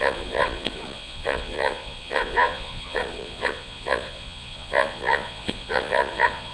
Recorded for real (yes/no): no